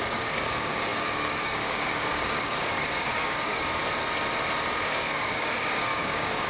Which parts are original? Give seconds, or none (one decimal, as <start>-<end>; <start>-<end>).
3.8-4.7